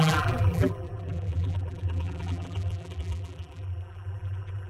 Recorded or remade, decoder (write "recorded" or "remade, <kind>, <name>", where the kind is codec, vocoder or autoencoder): remade, vocoder, BigVGAN v2